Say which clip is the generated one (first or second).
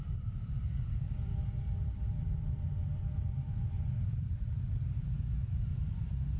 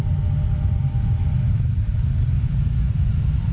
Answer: first